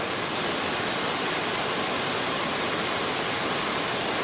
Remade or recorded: recorded